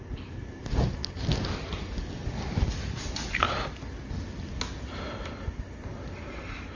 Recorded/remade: recorded